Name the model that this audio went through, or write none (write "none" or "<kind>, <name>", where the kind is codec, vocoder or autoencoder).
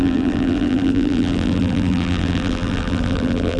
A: vocoder, BigVGAN v2